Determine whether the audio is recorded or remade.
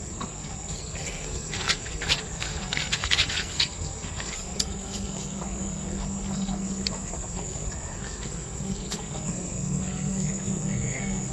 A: remade